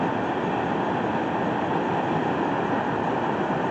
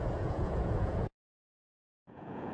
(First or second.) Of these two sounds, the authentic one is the first